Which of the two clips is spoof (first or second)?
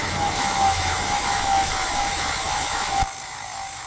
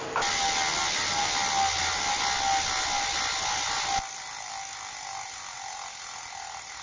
first